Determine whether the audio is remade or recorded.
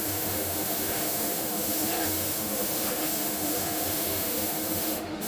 remade